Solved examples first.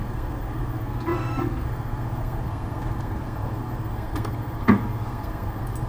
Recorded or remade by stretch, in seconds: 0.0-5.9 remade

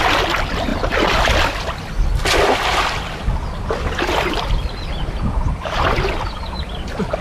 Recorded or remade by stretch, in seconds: 0.0-7.2 recorded

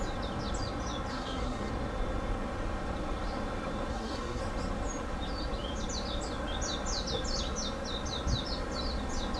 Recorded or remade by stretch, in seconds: 0.0-1.1 recorded; 1.1-1.7 remade; 1.7-3.9 recorded; 3.9-4.4 remade; 4.4-9.4 recorded

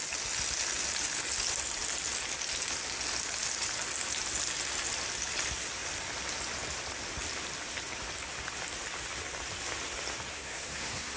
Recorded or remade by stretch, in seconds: 0.0-10.3 recorded; 10.3-11.2 remade

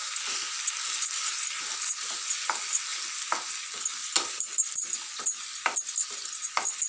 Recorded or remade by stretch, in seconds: 0.0-6.9 recorded

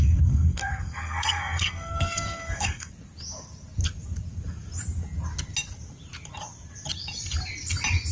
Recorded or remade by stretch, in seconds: 0.0-2.9 remade; 2.9-8.1 recorded